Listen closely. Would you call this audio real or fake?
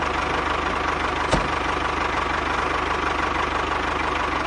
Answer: real